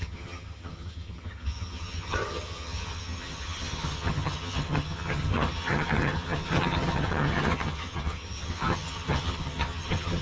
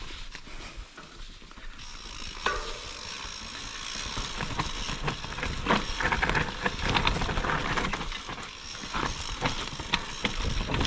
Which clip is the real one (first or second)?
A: second